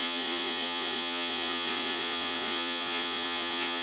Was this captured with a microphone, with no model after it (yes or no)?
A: no